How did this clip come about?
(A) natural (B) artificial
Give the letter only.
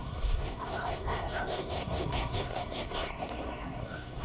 B